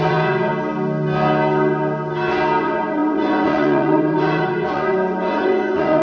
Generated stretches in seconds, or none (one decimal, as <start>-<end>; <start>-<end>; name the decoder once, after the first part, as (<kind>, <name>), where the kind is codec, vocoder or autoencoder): 0.0-0.5 (vocoder, Vocos); 2.6-6.0